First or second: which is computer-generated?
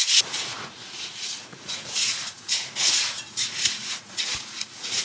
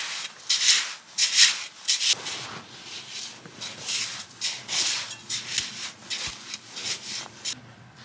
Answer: first